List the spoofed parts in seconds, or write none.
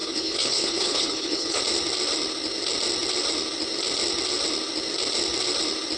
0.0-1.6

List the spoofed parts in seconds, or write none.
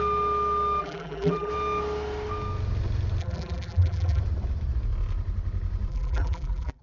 0.8-1.5; 3.2-4.2; 5.9-6.8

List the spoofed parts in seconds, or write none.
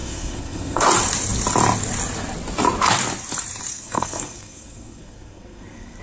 0.0-0.8; 3.7-6.0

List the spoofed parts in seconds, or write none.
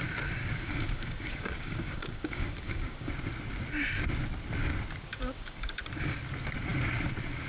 0.4-3.1; 5.1-5.8